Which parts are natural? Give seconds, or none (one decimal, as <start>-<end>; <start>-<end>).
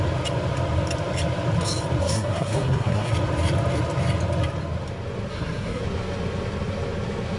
0.0-2.0; 3.1-5.3; 5.8-7.4